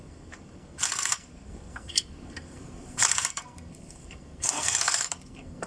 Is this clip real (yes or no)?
no